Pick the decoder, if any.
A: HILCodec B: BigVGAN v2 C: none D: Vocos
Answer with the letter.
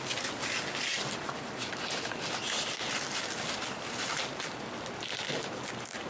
C